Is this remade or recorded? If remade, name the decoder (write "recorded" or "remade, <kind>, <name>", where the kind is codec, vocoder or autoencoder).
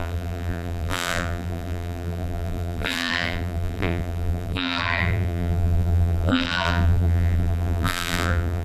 remade, vocoder, BigVGAN v2